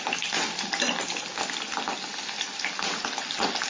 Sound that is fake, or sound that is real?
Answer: real